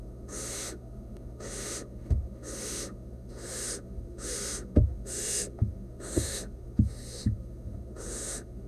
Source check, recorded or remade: remade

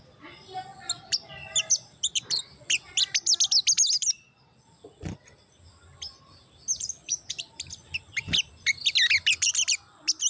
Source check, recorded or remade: recorded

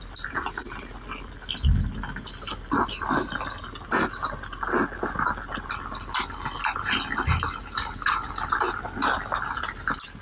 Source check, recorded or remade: recorded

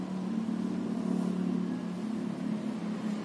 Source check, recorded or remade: recorded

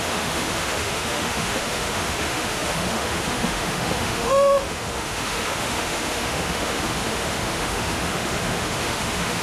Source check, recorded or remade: remade